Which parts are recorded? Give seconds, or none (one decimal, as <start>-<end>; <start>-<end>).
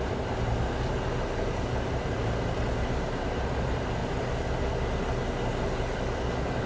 0.0-6.7